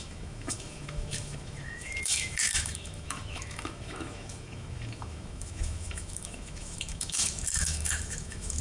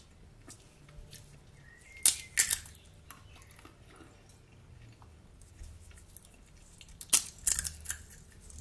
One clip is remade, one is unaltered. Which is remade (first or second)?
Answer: first